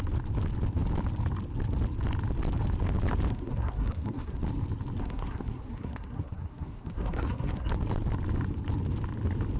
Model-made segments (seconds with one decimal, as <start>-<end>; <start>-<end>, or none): 3.3-4.4; 5.0-7.7